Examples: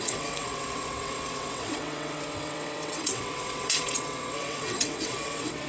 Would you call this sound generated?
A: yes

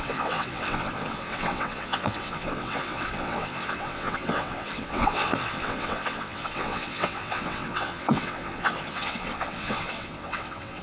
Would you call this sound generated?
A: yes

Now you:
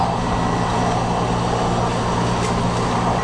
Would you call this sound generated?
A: no